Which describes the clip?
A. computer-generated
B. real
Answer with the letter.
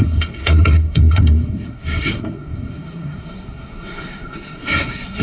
A